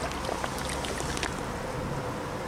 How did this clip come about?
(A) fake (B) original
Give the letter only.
B